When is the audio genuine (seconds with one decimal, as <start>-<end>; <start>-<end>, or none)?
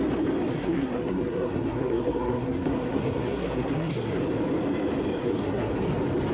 0.0-0.5; 4.2-5.2; 5.7-6.3